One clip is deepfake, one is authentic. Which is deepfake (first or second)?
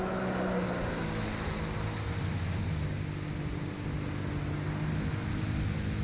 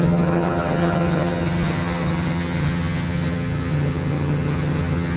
second